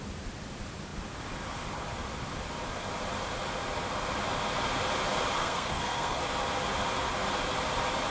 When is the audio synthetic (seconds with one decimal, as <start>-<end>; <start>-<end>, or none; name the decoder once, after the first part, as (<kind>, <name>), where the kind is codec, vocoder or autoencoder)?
5.4-6.2 (codec, SNAC)